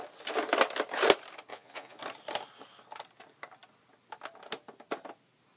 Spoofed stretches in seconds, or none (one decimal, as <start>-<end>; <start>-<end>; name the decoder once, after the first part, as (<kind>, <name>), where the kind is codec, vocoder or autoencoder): 1.5-2.0 (vocoder, Vocos)